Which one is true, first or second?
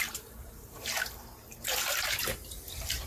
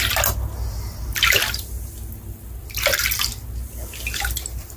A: second